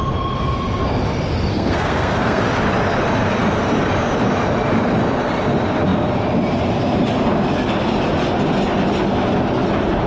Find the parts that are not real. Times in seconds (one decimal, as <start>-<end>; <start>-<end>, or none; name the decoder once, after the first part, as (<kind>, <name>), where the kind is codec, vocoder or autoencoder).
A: 1.5-2.4 (codec, SNAC)

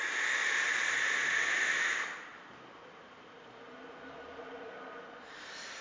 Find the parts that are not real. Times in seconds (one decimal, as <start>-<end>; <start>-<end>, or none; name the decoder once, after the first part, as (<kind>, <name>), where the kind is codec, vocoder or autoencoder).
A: 2.3-5.8 (vocoder, BigVGAN v2)

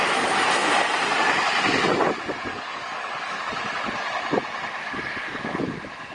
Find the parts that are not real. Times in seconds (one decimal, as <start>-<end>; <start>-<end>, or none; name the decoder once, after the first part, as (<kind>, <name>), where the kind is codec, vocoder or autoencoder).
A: 2.5-3.4 (codec, DAC); 4.8-5.6

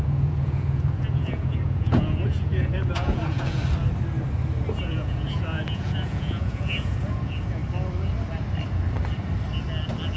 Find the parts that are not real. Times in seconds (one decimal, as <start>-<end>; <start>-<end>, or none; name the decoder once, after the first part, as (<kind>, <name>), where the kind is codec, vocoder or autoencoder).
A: 0.0-3.6 (vocoder, Vocos); 4.8-7.6

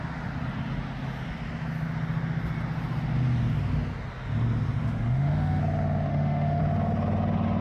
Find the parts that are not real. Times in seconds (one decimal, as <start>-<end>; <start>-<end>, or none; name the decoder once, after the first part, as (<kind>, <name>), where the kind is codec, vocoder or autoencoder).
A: 4.8-5.6 (autoencoder, DAC-VAE); 6.1-6.6

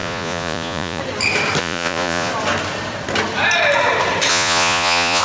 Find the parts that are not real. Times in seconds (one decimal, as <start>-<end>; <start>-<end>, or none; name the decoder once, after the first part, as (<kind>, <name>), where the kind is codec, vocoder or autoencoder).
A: 0.0-1.0 (vocoder, Vocos); 1.6-2.3; 4.3-5.2

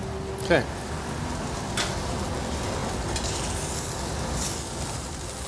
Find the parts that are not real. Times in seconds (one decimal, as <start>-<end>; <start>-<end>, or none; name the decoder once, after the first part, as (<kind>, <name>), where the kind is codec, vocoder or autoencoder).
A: none

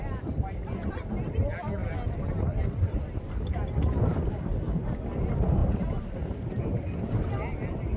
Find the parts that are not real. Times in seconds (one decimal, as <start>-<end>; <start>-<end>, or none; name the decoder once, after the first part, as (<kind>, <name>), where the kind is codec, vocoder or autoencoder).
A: none